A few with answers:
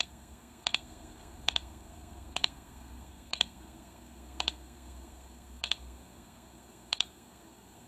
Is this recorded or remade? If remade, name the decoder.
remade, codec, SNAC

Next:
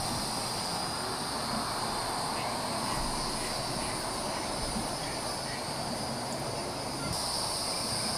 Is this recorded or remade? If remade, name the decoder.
recorded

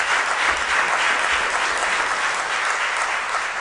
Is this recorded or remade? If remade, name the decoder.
recorded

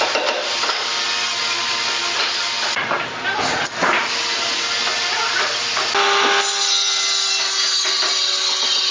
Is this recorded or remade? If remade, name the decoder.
recorded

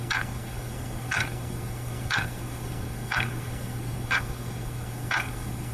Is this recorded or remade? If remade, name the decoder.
remade, codec, SNAC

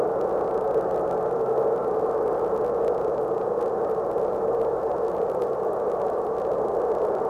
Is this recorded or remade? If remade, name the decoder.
recorded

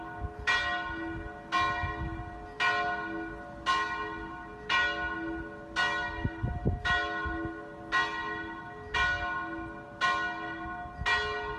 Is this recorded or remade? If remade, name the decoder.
recorded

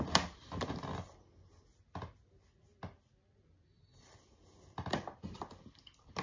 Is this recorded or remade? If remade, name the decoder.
recorded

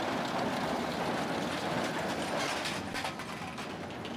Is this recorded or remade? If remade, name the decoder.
recorded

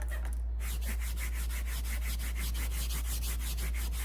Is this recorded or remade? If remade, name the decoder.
recorded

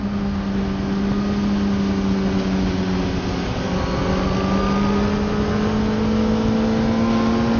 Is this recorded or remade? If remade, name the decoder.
recorded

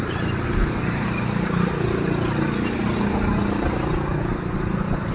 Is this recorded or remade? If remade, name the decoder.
recorded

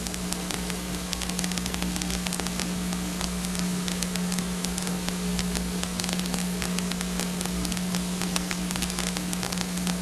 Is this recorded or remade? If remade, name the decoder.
remade, codec, SNAC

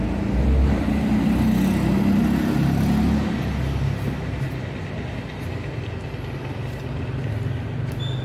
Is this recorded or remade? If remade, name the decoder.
recorded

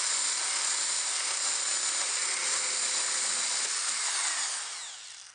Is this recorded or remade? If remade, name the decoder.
recorded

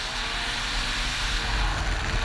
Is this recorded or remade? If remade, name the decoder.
recorded